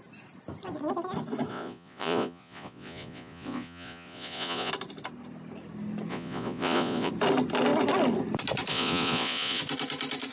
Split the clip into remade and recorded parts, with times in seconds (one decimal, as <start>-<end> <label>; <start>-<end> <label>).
0.0-1.5 recorded; 1.5-4.7 remade; 4.7-6.1 recorded; 6.1-7.1 remade; 7.1-8.7 recorded; 8.7-9.6 remade; 9.6-10.3 recorded

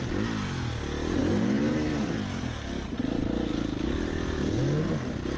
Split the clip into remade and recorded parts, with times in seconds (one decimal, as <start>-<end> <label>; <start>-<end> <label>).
0.0-5.4 recorded

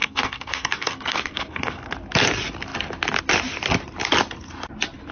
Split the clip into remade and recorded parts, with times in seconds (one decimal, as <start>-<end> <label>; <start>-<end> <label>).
0.0-1.9 remade; 1.9-5.1 recorded

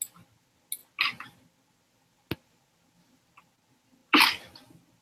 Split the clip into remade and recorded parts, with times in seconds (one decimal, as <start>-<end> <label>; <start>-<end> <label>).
0.0-5.0 recorded

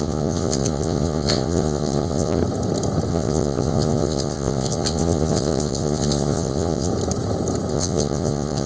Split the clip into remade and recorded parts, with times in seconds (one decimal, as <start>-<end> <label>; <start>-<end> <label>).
0.0-2.4 remade; 2.4-3.1 recorded; 3.1-6.9 remade; 6.9-7.7 recorded; 7.7-8.7 remade

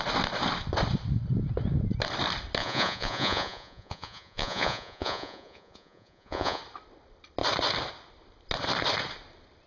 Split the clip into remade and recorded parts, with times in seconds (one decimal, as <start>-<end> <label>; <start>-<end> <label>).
0.0-2.6 recorded; 2.6-6.6 remade; 6.6-9.7 recorded